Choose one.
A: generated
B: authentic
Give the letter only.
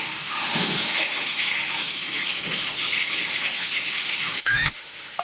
A